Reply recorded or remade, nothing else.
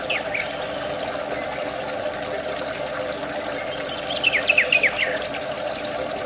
recorded